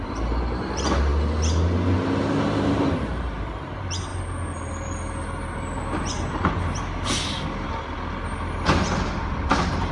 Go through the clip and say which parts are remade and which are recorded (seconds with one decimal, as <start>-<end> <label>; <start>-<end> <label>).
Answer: 0.0-1.1 remade; 1.1-2.4 recorded; 2.4-4.1 remade; 4.1-9.2 recorded; 9.2-9.9 remade